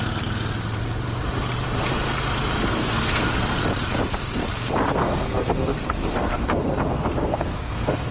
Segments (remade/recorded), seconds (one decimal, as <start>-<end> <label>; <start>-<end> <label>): 0.0-2.8 recorded; 2.8-3.6 remade; 3.6-5.0 recorded; 5.0-8.1 remade